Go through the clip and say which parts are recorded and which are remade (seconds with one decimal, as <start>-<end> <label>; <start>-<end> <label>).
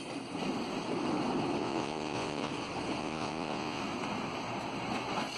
0.0-1.6 recorded; 1.6-2.5 remade; 2.5-3.0 recorded; 3.0-3.8 remade; 3.8-5.4 recorded